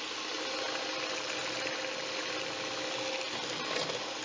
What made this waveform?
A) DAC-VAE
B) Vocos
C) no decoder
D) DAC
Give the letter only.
C